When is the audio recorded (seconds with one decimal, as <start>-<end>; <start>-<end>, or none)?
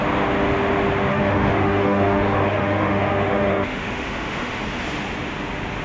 0.0-1.1; 4.6-5.8